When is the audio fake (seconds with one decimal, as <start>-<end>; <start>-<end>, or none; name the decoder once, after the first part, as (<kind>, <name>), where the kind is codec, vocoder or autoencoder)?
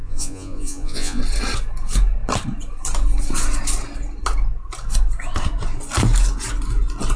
0.0-1.2 (vocoder, Vocos)